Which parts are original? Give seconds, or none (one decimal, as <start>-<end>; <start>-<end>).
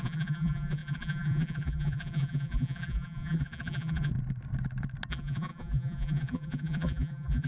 4.1-5.1